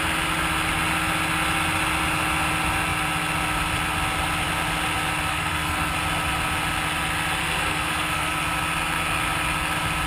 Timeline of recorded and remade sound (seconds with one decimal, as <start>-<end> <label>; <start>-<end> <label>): 0.0-5.3 recorded; 5.3-5.9 remade; 5.9-7.4 recorded; 7.4-8.3 remade; 8.3-10.1 recorded